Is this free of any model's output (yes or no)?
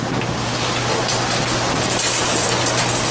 yes